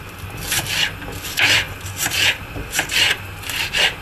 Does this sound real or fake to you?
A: real